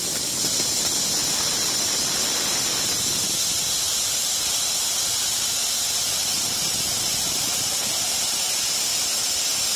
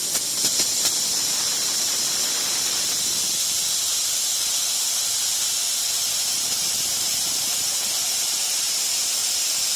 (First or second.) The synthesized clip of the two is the second